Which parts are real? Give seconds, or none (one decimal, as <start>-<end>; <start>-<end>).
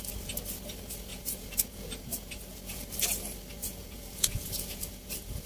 0.0-1.1; 2.7-3.6